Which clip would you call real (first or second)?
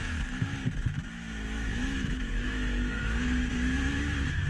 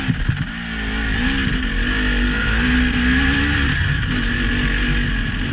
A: second